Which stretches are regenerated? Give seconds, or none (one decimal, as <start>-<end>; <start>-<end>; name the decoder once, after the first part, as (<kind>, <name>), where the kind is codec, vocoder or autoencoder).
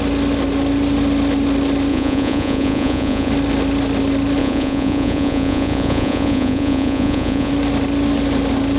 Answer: 1.9-3.3 (vocoder, Vocos); 4.4-7.5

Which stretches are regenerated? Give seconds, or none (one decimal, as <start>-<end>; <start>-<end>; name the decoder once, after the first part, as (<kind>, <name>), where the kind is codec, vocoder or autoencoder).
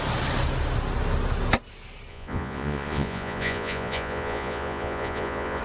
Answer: 2.1-5.6 (vocoder, Vocos)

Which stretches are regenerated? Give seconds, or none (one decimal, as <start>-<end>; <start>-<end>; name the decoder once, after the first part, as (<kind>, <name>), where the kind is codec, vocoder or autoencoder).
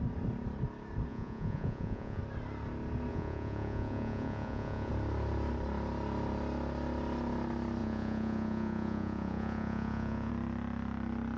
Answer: 1.1-2.2 (vocoder, Vocos); 3.1-4.9; 7.8-10.3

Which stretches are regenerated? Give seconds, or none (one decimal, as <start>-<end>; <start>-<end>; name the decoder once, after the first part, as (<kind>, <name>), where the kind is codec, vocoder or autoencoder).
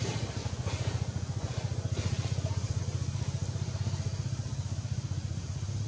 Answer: 0.4-2.8 (vocoder, Vocos)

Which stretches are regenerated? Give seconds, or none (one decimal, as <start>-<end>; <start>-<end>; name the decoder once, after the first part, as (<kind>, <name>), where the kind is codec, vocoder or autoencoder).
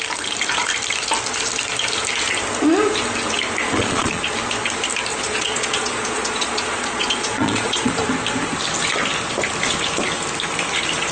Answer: 3.6-4.2 (vocoder, Vocos); 5.1-7.9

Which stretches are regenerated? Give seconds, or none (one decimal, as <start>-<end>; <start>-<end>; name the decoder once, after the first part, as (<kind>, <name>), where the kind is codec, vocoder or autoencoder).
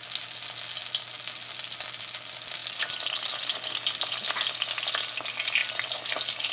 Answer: none